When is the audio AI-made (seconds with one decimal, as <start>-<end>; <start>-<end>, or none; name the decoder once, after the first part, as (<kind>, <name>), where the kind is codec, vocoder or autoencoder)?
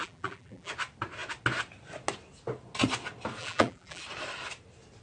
0.0-0.7 (vocoder, BigVGAN v2); 3.4-4.0